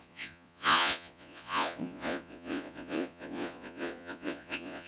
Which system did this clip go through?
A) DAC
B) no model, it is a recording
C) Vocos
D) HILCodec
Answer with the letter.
C